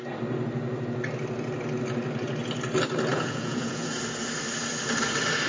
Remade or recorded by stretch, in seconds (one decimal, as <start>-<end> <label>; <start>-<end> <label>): 0.0-3.1 recorded; 3.1-4.0 remade; 4.0-5.5 recorded